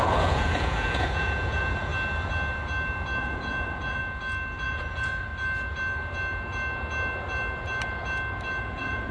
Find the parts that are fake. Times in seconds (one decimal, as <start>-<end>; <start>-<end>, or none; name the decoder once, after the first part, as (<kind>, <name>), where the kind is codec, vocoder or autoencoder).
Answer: 0.0-1.9 (vocoder, Vocos); 3.2-4.0; 4.6-5.3; 8.6-9.1